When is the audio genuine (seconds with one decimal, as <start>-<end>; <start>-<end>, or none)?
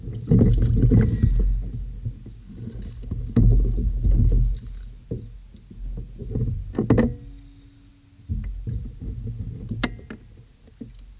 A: 0.0-11.2